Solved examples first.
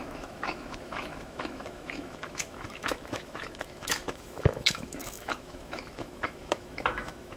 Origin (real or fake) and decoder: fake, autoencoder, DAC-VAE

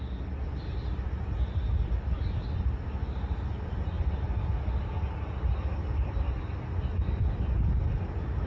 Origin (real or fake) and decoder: real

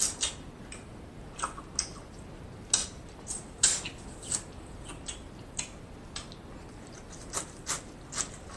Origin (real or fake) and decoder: real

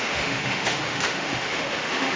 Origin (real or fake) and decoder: fake, autoencoder, DAC-VAE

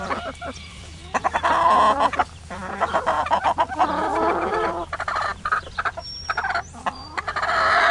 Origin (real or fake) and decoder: fake, vocoder, BigVGAN v2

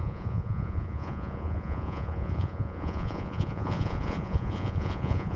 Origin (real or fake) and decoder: fake, vocoder, Vocos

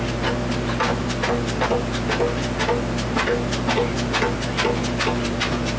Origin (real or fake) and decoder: real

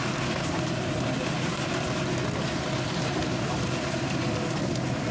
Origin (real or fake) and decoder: real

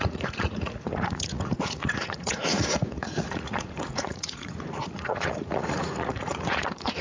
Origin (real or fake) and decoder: fake, vocoder, Vocos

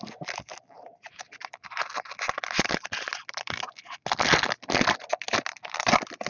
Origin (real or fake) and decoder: real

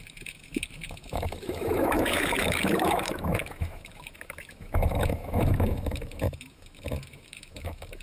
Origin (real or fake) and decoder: fake, autoencoder, DAC-VAE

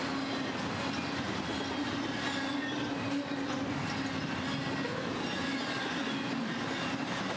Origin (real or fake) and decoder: real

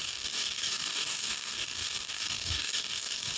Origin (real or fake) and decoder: fake, codec, DAC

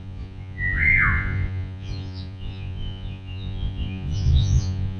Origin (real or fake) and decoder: fake, vocoder, Vocos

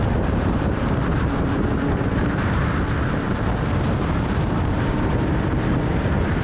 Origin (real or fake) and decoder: fake, vocoder, BigVGAN v2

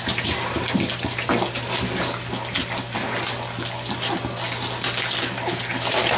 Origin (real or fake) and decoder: real